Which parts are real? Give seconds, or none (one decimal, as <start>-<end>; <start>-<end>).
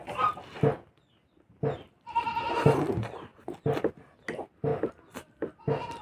0.0-6.0